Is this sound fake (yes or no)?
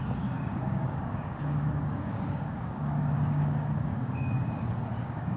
yes